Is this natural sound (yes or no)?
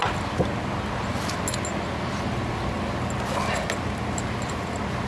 yes